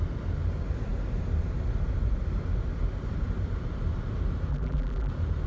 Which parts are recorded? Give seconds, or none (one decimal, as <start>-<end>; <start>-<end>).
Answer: 0.0-4.5; 5.1-5.5